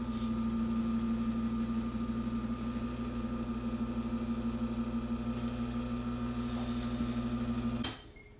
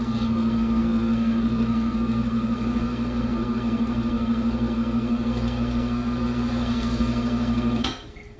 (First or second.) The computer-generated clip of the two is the second